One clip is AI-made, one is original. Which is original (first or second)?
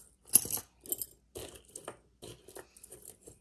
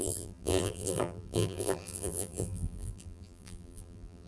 first